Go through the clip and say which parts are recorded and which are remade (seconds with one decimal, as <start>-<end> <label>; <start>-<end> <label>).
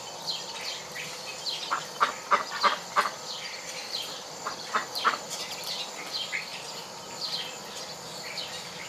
0.0-3.8 recorded; 3.8-5.5 remade; 5.5-8.9 recorded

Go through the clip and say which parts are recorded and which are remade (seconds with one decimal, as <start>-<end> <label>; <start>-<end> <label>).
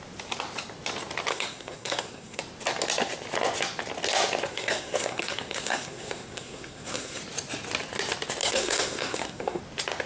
0.0-1.3 recorded; 1.3-2.4 remade; 2.4-4.5 recorded; 4.5-7.2 remade; 7.2-8.4 recorded; 8.4-9.6 remade; 9.6-10.1 recorded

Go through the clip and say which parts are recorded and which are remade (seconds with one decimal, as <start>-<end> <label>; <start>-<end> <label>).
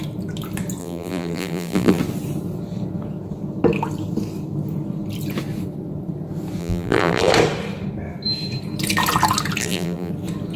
0.0-0.8 recorded; 0.8-2.0 remade; 2.0-6.6 recorded; 6.6-7.3 remade; 7.3-9.6 recorded; 9.6-10.1 remade; 10.1-10.6 recorded